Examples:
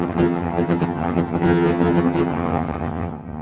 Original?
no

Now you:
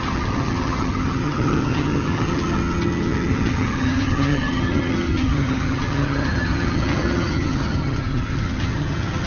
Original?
no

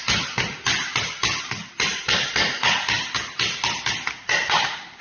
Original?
yes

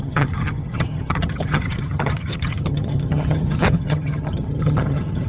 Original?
no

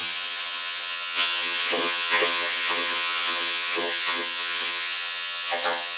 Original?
no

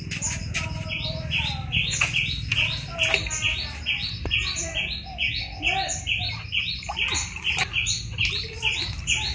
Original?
yes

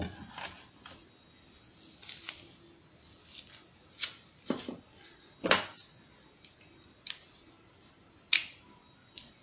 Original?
yes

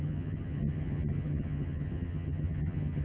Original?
no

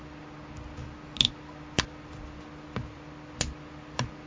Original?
yes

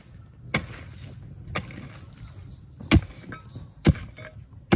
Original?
yes